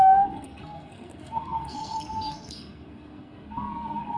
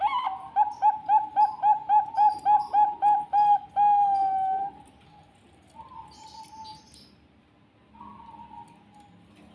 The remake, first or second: first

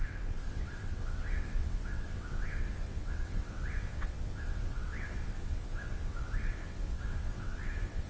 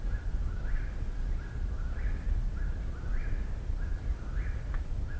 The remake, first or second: first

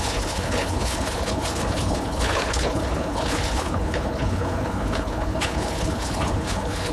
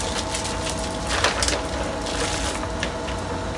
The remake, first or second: first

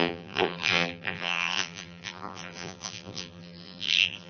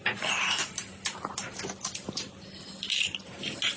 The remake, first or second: first